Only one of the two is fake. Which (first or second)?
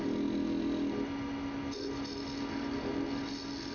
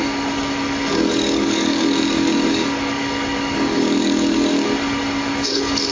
second